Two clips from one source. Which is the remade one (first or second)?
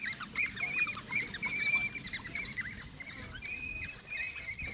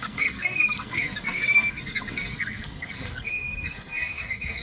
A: second